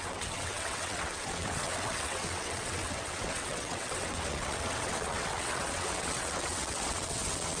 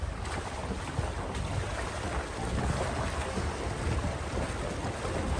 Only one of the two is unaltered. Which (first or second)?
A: second